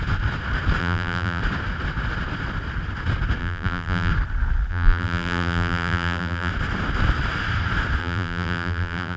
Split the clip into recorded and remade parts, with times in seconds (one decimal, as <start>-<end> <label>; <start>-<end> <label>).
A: 0.0-0.8 recorded; 0.8-1.4 remade; 1.4-3.4 recorded; 3.4-4.1 remade; 4.1-4.7 recorded; 4.7-6.5 remade; 6.5-8.0 recorded; 8.0-9.2 remade

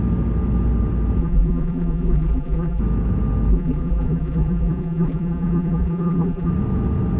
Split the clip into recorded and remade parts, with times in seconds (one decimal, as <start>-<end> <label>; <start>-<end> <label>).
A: 0.0-1.2 recorded; 1.2-2.8 remade; 2.8-3.5 recorded; 3.5-6.5 remade; 6.5-7.2 recorded